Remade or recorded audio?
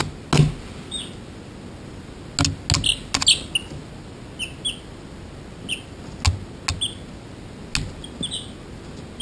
recorded